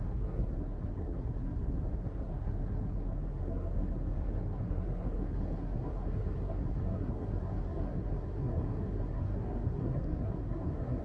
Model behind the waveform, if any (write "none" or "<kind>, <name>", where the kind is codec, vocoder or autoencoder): codec, SNAC